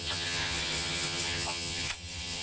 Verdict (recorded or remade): remade